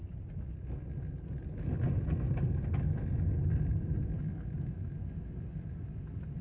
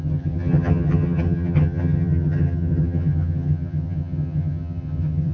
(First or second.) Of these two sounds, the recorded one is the first